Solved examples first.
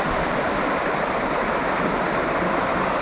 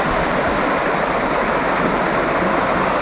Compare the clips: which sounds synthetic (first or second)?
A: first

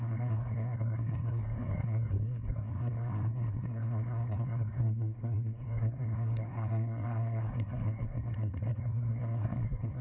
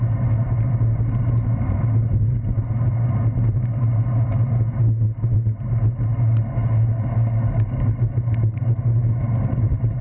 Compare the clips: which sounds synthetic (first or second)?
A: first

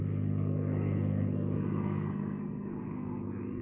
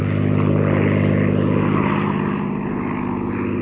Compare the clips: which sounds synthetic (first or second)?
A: first